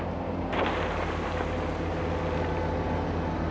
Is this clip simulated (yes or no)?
no